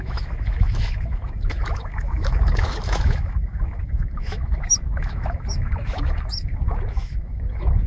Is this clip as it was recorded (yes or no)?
no